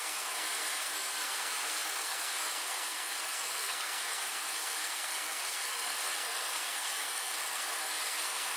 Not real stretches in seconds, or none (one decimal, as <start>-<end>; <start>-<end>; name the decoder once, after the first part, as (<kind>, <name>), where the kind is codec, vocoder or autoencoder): 0.0-8.6 (codec, SNAC)